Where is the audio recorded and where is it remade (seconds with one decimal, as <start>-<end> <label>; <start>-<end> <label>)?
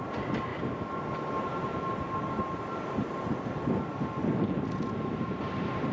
0.0-3.9 recorded; 3.9-4.4 remade; 4.4-5.9 recorded